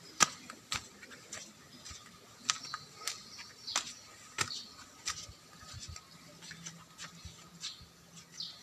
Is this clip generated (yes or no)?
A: no